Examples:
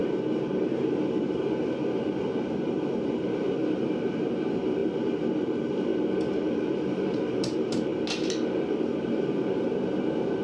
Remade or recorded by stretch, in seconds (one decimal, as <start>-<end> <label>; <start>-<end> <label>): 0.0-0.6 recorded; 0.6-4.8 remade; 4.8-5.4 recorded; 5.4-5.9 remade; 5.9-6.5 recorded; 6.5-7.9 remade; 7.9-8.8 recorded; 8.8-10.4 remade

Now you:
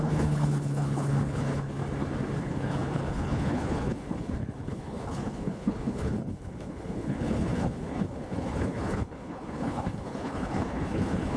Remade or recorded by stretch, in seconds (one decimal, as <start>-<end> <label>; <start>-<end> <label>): 0.0-1.8 remade; 1.8-2.4 recorded; 2.4-11.4 remade

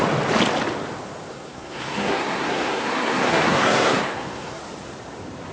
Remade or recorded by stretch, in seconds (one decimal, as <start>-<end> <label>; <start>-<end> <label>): 0.0-1.3 recorded; 1.3-4.6 remade; 4.6-5.5 recorded

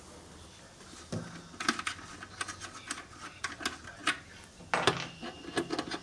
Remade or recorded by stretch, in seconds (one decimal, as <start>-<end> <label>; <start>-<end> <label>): 0.0-6.0 recorded

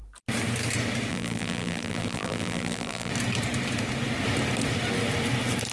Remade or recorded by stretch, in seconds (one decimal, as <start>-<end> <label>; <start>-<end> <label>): 0.0-1.1 recorded; 1.1-3.1 remade; 3.1-5.7 recorded

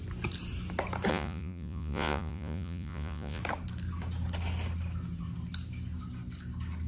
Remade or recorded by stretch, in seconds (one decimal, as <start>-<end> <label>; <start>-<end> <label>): 0.0-1.1 recorded; 1.1-3.4 remade; 3.4-6.9 recorded

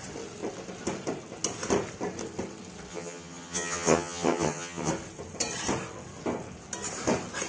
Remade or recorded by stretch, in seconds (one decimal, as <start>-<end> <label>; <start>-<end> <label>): 0.0-2.9 recorded; 2.9-4.9 remade; 4.9-7.5 recorded